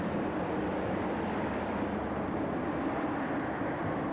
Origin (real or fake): real